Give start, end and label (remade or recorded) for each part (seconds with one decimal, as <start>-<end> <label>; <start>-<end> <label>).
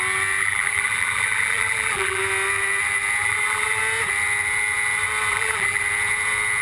0.0-0.4 recorded; 0.4-2.2 remade; 2.2-3.2 recorded; 3.2-3.8 remade; 3.8-5.3 recorded; 5.3-5.8 remade; 5.8-6.6 recorded